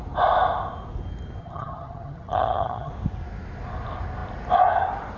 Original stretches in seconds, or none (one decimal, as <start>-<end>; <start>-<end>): 0.0-1.4; 2.9-5.2